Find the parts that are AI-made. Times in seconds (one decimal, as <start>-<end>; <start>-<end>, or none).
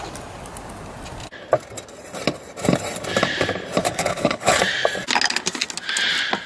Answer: 3.8-4.6